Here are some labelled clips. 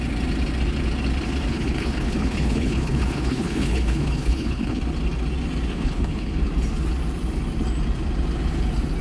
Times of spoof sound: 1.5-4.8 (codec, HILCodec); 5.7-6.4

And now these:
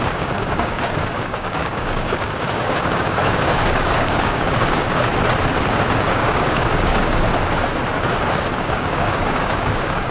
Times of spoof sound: 0.0-5.1 (codec, DAC); 6.1-7.3; 8.6-10.1

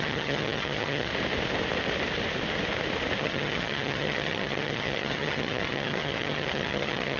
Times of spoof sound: 0.0-1.1 (vocoder, HiFi-GAN); 3.2-7.2